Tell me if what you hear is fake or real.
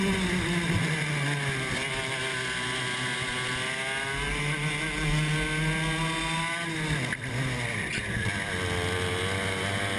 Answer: real